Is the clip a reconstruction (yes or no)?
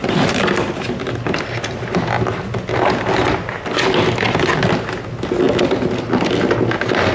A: no